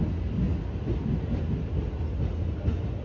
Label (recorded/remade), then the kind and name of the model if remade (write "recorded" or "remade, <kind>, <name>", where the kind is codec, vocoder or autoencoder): recorded